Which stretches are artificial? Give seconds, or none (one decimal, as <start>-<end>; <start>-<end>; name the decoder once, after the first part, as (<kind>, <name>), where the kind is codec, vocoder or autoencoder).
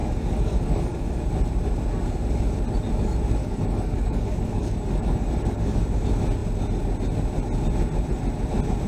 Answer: 0.0-1.2 (codec, DAC); 3.4-5.8